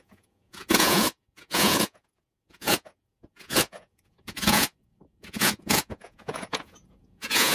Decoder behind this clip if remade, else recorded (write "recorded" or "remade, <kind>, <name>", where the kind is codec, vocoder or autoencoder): remade, vocoder, Vocos